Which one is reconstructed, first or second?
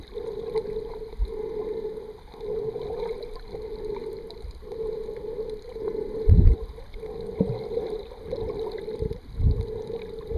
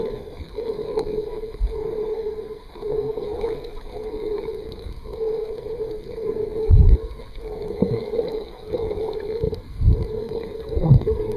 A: second